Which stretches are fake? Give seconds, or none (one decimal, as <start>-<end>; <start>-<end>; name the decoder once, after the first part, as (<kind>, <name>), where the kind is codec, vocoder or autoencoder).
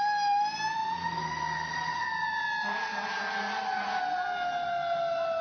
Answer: none